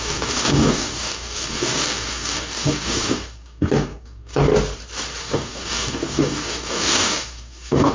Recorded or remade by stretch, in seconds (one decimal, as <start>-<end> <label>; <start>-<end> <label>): 0.0-4.5 remade; 4.5-5.2 recorded; 5.2-7.9 remade